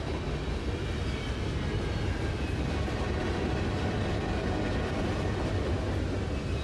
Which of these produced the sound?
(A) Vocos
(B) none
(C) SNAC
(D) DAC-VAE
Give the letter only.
B